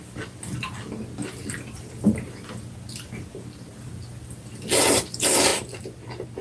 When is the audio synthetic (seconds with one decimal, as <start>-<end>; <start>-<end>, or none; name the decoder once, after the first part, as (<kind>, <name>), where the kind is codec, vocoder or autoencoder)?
none